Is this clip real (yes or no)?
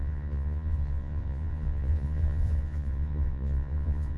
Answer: no